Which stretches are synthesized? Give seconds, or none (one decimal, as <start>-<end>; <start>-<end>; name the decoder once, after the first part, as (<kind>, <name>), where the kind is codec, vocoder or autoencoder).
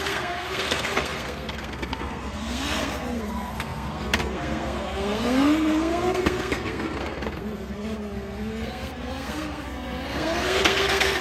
0.0-11.2 (codec, SNAC)